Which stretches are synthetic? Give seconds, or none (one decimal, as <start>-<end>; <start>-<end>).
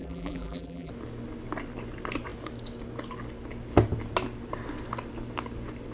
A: 0.0-0.9